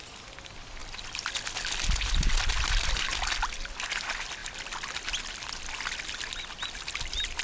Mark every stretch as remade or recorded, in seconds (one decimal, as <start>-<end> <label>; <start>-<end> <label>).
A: 0.0-7.4 recorded